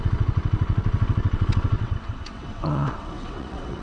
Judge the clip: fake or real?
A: fake